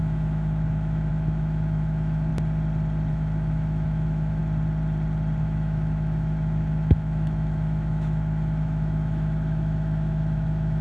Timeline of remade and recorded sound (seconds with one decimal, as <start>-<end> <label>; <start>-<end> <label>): 0.0-2.3 remade; 2.3-3.1 recorded; 3.1-4.4 remade; 4.4-5.4 recorded; 5.4-10.8 remade